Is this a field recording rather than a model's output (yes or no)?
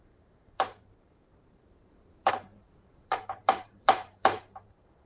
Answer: no